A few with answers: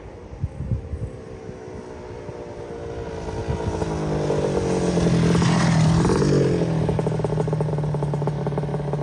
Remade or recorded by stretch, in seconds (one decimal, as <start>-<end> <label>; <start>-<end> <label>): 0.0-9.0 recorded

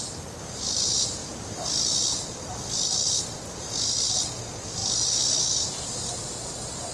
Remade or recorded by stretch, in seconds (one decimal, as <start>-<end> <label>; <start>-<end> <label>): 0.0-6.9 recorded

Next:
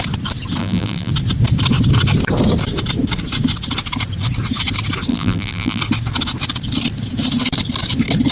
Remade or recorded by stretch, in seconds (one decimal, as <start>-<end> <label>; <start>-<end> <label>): 0.0-0.6 recorded; 0.6-1.1 remade; 1.1-5.1 recorded; 5.1-5.8 remade; 5.8-8.3 recorded

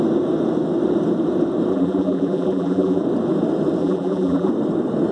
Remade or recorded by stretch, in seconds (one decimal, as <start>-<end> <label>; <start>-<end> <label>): 0.0-1.7 recorded; 1.7-3.0 remade; 3.0-3.8 recorded; 3.8-4.5 remade; 4.5-5.1 recorded